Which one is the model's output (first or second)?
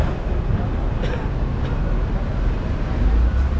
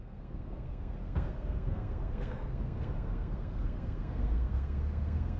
second